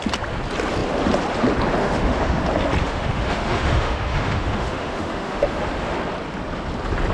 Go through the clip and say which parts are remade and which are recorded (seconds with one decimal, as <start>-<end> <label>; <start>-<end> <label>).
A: 0.0-1.8 recorded; 1.8-2.4 remade; 2.4-2.8 recorded; 2.8-5.6 remade; 5.6-7.1 recorded